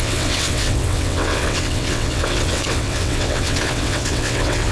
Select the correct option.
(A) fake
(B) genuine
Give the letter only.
A